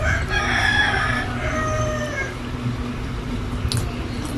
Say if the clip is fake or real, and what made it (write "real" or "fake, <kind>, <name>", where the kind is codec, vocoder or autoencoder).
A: real